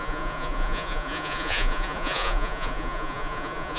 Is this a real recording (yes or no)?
no